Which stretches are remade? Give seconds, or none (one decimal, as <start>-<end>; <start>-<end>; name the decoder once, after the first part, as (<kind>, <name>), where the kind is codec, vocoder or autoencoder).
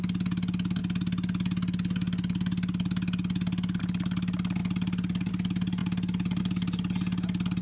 none